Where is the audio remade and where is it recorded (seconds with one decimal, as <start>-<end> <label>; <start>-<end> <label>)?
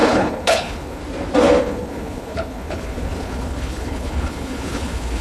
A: 0.0-1.0 remade; 1.0-1.6 recorded; 1.6-5.2 remade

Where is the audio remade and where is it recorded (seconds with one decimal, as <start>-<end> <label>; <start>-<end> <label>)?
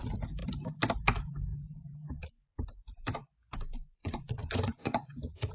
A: 0.0-4.0 recorded; 4.0-5.5 remade